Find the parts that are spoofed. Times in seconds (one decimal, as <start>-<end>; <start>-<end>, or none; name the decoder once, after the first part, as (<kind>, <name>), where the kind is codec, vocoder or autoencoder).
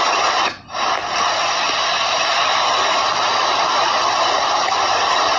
0.0-5.4 (vocoder, BigVGAN v2)